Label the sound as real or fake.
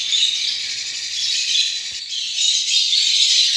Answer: fake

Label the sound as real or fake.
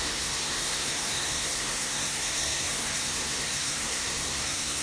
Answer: fake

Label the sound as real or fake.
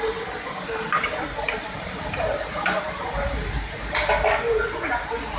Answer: real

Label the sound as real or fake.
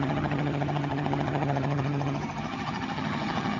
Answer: fake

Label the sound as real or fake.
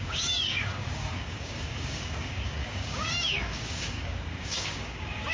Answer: fake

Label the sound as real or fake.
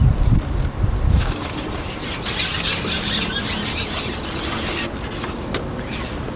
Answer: real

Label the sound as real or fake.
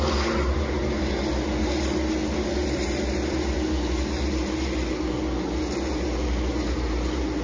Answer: real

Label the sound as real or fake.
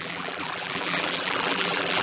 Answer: fake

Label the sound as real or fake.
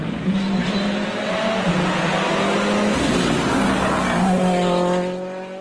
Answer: real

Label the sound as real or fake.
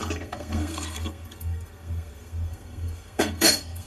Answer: fake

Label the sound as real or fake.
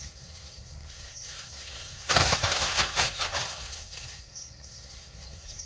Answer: fake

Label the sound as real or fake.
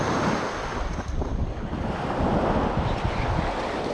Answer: real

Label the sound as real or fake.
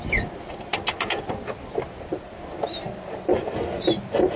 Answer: real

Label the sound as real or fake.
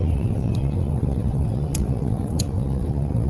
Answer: fake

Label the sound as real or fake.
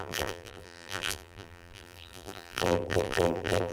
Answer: fake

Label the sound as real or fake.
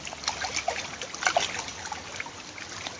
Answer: real